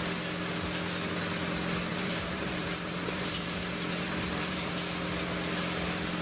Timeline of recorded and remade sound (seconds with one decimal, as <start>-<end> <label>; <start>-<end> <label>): 0.0-1.9 recorded; 1.9-4.7 remade; 4.7-6.2 recorded